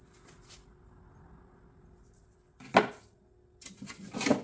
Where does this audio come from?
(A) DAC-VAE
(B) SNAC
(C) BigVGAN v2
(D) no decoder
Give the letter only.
D